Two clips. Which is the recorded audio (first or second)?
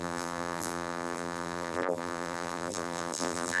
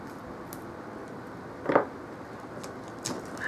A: second